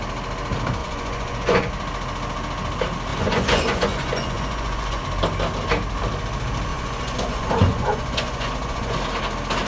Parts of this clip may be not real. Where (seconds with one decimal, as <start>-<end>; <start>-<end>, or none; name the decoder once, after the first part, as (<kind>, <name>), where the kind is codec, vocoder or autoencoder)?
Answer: 0.8-1.7 (vocoder, Vocos); 3.1-5.0; 6.7-9.0